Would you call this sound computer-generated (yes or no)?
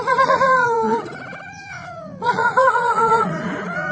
yes